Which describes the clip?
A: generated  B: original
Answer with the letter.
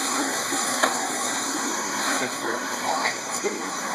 A